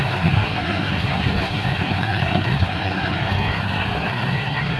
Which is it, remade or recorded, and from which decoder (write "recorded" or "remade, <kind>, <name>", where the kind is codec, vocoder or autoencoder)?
remade, codec, SNAC